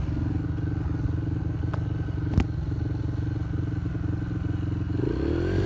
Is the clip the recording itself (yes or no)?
yes